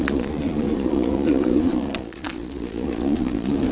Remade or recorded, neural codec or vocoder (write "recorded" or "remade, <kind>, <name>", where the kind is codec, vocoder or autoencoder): remade, vocoder, Vocos